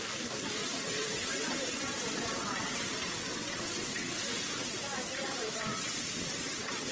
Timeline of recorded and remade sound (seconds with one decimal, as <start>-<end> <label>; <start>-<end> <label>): 0.0-0.6 recorded; 0.6-4.7 remade; 4.7-5.2 recorded; 5.2-6.9 remade